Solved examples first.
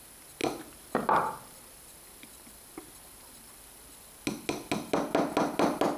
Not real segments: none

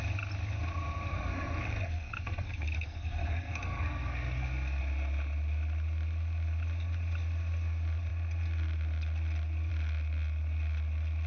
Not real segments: 1.1-4.8 (codec, SNAC)

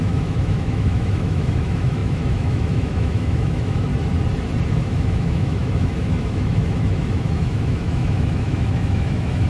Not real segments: 0.0-3.9 (autoencoder, DAC-VAE); 4.7-9.5

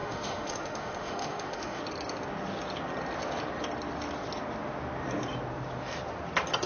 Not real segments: 0.0-1.8 (autoencoder, DAC-VAE)

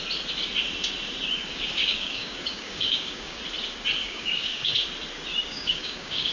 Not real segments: 1.5-3.4 (codec, DAC); 4.0-4.7; 5.4-6.3

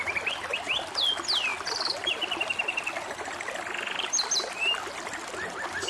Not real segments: none